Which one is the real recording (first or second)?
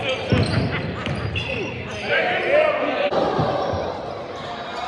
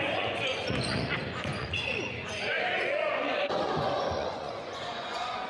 first